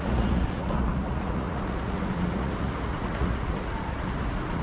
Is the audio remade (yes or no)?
yes